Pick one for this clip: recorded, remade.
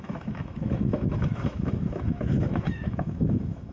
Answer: remade